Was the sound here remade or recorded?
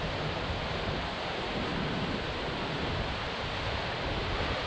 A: remade